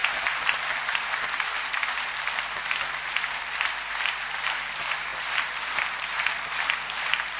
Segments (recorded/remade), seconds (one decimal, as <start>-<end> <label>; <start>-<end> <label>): 0.0-7.4 recorded